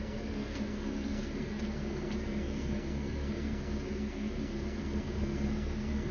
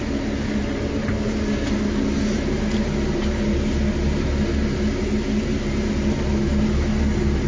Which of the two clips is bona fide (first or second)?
second